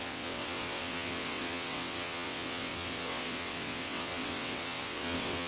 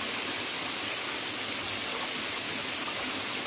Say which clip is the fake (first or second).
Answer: first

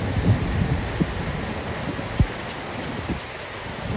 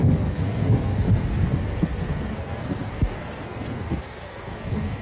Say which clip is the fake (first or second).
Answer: second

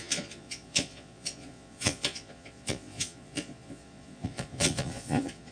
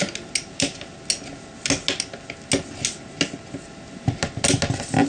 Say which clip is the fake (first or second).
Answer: first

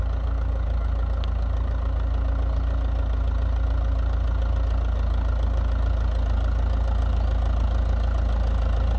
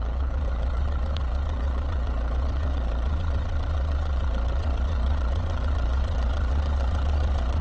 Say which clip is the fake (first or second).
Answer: second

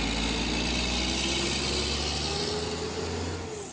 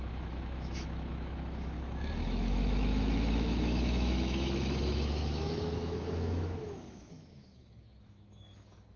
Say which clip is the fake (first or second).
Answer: second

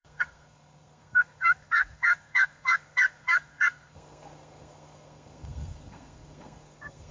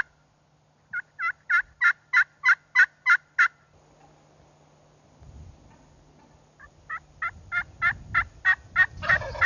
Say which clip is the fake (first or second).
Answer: first